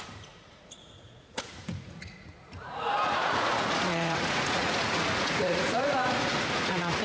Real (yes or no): no